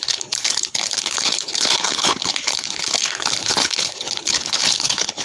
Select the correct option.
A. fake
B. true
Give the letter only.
A